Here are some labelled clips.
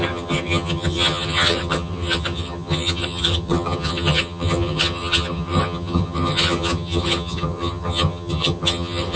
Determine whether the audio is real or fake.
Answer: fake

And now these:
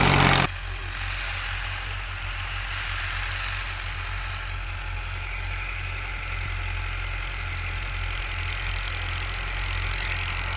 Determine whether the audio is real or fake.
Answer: real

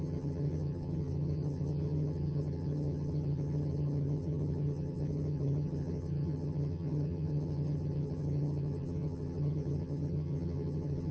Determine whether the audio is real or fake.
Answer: fake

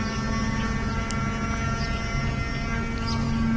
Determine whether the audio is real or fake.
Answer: real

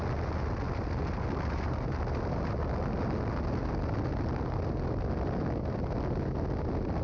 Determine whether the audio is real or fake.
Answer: real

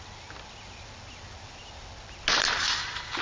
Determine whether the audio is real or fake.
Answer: real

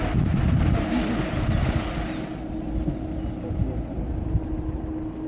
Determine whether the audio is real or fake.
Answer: real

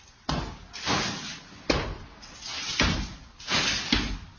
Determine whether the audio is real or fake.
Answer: real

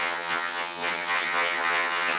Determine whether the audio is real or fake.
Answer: fake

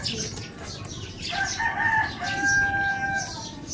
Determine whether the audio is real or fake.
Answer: real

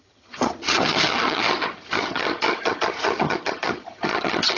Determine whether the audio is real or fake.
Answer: fake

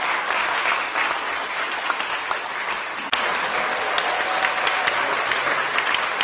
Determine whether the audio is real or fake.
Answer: real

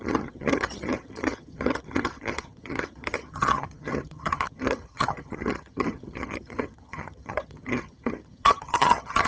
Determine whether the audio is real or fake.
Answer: fake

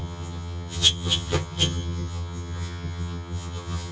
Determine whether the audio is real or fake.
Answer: fake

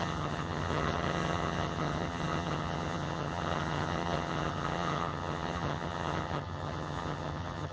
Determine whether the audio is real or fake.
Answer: fake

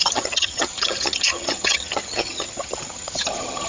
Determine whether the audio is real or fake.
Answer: fake